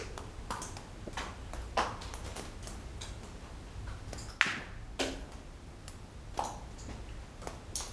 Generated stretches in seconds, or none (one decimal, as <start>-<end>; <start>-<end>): none